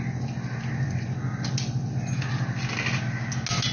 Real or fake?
real